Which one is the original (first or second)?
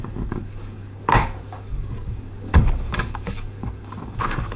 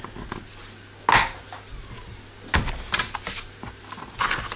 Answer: second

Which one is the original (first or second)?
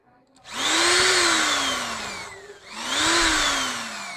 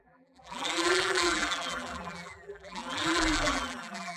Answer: first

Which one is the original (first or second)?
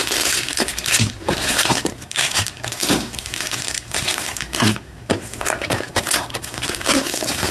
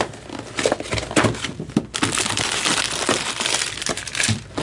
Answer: second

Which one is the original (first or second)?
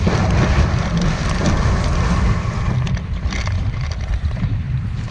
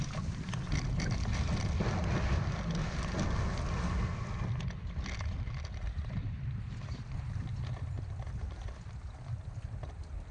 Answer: second